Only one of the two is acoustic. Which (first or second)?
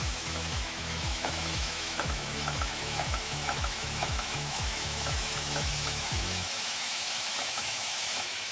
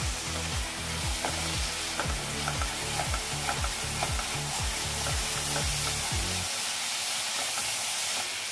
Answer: second